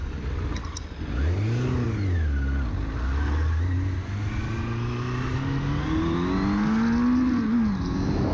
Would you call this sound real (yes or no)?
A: yes